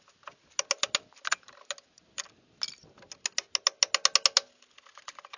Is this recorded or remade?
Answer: recorded